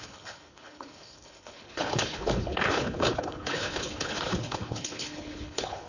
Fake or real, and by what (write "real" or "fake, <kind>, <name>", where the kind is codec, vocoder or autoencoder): fake, codec, HILCodec